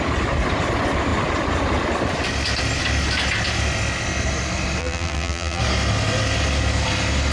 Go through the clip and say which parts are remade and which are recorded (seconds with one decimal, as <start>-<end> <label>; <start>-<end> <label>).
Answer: 0.0-4.8 recorded; 4.8-5.6 remade; 5.6-7.3 recorded